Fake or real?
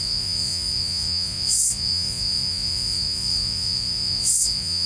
fake